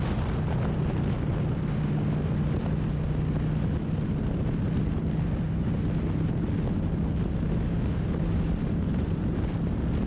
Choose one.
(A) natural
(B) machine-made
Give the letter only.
A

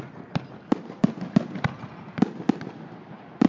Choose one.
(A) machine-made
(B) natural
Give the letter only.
B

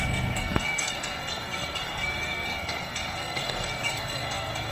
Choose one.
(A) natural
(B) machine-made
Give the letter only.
B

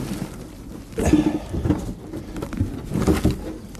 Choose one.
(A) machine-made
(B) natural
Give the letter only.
B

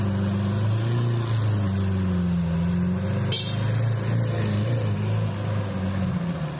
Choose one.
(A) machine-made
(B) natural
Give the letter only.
B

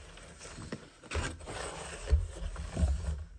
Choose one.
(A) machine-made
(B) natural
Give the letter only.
B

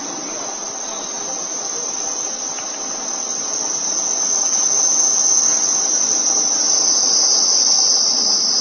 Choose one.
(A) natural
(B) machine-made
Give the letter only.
A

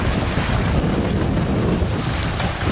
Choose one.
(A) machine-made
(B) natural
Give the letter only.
B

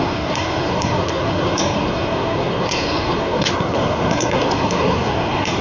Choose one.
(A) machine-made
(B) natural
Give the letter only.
A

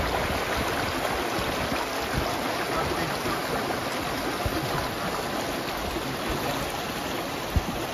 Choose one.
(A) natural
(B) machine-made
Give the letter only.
A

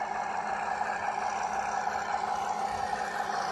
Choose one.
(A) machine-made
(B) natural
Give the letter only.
B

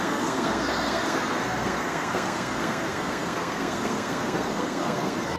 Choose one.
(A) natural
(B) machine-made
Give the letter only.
B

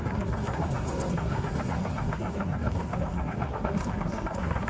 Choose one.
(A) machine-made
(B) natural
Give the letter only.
A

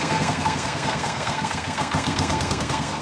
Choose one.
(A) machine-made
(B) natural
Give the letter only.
A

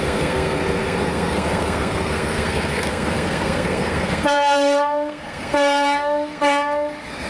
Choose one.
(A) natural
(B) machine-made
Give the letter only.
B